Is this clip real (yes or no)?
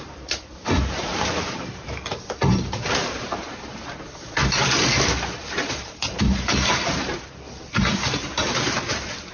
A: no